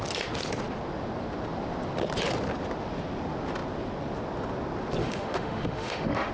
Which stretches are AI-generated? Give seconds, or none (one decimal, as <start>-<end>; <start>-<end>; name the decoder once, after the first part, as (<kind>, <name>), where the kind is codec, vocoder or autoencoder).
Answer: 5.0-6.3 (autoencoder, DAC-VAE)